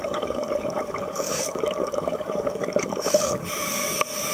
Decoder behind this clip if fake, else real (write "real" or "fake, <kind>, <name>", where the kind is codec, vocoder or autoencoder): fake, codec, DAC